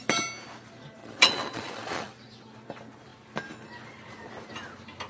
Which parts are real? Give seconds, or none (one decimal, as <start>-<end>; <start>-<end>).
0.0-1.0; 2.1-5.1

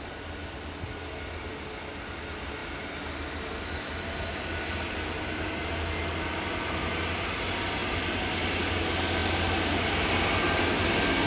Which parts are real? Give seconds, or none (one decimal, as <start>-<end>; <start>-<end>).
0.0-11.3

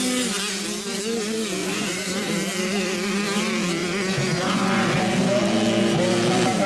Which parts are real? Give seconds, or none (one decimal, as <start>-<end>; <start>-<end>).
0.0-1.6; 2.3-3.8; 5.0-6.7

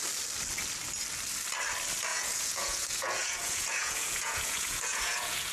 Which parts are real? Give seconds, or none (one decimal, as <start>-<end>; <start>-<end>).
0.0-2.1

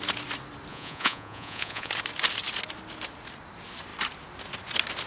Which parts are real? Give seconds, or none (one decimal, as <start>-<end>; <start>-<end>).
0.0-0.7; 1.9-5.1

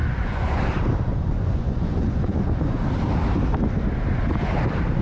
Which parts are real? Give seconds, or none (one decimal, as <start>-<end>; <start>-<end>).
0.6-1.1; 2.8-5.0

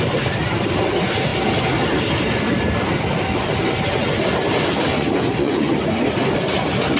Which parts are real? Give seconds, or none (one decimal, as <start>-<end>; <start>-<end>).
0.0-4.9; 5.8-7.0